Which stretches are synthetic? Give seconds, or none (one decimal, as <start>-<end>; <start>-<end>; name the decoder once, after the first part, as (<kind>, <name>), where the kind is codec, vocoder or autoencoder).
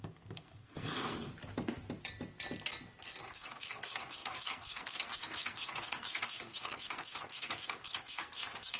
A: 0.0-1.3 (codec, SNAC); 3.3-8.8